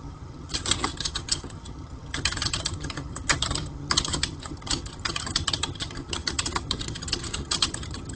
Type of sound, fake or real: fake